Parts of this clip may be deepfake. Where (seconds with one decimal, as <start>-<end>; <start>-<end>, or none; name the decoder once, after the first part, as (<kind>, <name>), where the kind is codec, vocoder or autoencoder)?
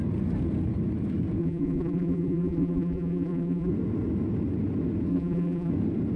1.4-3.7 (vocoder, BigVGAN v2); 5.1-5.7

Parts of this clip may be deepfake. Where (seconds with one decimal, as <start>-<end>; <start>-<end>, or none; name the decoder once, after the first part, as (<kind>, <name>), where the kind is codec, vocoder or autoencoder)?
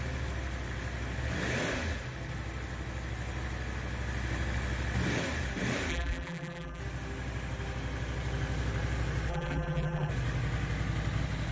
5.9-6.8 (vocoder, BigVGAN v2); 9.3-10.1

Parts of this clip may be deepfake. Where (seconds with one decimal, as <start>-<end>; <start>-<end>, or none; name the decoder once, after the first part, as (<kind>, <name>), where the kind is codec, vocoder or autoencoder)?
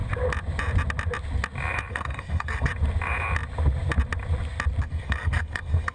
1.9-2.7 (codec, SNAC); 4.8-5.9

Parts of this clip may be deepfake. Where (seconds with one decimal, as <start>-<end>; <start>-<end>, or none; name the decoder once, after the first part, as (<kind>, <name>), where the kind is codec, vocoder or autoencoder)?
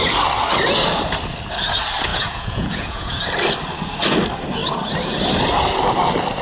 2.1-3.2 (vocoder, Vocos)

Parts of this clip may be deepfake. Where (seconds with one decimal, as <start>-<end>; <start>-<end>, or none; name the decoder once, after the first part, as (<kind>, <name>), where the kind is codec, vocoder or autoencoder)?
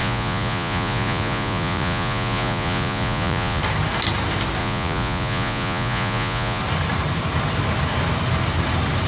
0.0-3.6 (vocoder, Vocos); 4.6-6.6